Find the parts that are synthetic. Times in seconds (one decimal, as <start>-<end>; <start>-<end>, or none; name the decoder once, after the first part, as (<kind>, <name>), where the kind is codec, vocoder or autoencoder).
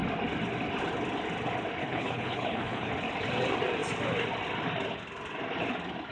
1.8-2.9 (codec, HILCodec)